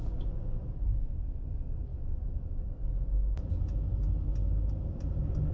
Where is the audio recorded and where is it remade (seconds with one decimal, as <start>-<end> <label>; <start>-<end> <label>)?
0.0-5.5 recorded